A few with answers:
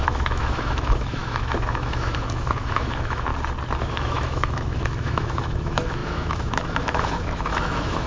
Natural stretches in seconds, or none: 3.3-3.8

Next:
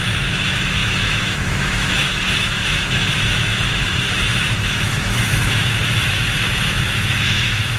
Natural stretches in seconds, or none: none

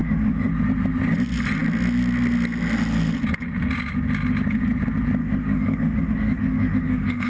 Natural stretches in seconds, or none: 0.5-5.2

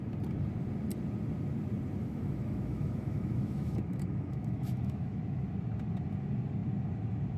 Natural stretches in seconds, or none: 0.0-2.0; 5.2-7.4

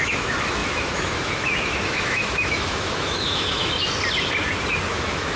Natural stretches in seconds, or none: 3.6-4.9